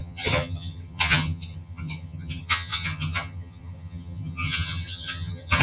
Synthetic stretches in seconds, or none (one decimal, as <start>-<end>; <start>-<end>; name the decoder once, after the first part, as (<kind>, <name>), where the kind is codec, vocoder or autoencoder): 0.0-5.6 (vocoder, HiFi-GAN)